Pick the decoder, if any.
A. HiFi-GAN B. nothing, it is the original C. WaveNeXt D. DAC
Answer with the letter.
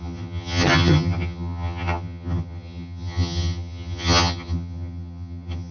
A